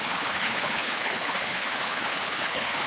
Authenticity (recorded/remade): remade